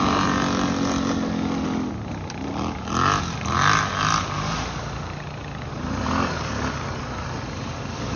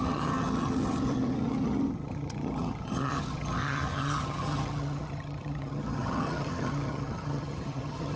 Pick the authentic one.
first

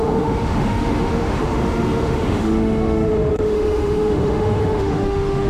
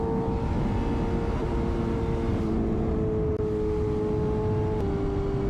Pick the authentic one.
second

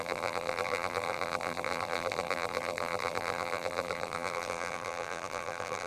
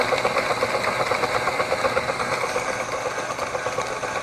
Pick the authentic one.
second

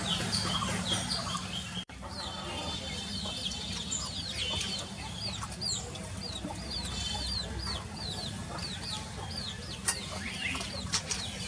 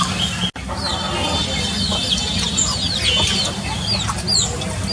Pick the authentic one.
second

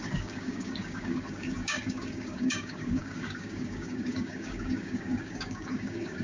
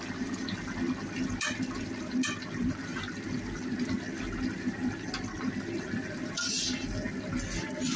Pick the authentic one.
second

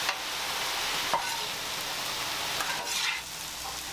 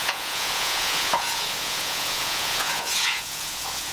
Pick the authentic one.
first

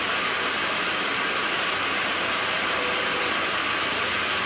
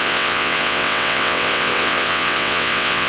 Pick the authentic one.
first